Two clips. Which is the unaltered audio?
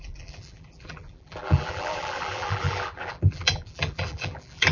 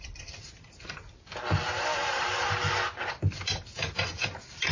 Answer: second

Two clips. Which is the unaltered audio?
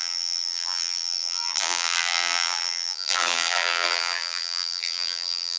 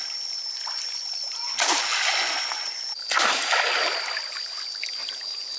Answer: second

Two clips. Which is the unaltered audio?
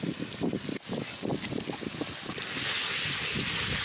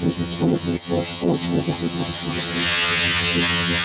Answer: first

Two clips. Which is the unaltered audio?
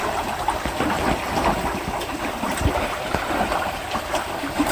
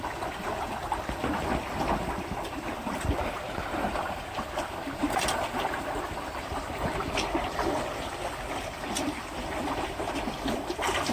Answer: second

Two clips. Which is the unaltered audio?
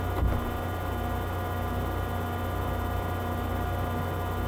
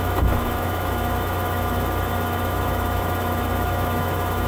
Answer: first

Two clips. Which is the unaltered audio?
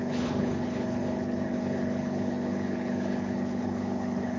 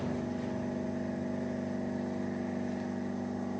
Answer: second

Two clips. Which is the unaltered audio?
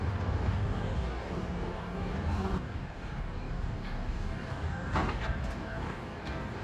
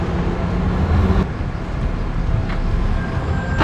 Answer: second